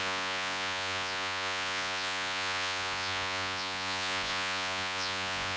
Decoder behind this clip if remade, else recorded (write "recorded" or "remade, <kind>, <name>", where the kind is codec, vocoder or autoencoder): remade, vocoder, Vocos